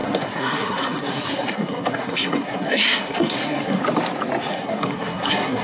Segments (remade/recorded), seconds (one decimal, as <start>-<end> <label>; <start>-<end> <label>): 0.0-3.8 remade; 3.8-4.5 recorded; 4.5-5.6 remade